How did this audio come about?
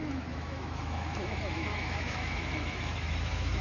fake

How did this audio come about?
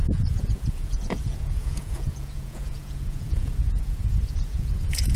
fake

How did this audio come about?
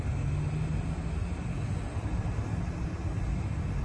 real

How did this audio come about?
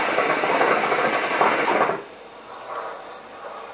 real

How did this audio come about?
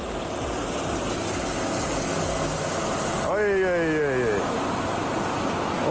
real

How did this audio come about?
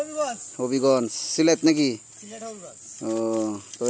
real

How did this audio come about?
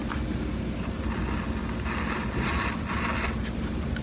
real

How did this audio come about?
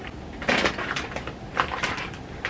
real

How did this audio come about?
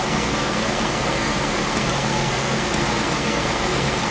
fake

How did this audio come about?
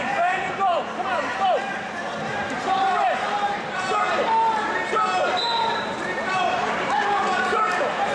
fake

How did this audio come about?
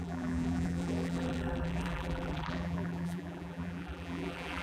fake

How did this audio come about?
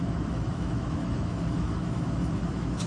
fake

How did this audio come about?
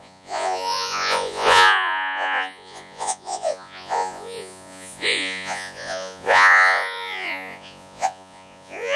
fake